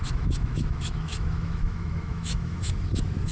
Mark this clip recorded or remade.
remade